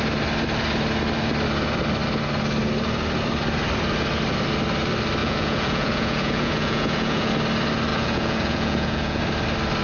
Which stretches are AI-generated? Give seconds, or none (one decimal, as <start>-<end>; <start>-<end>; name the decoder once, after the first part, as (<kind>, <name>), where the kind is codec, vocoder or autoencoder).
5.2-7.3 (vocoder, Vocos); 7.9-9.2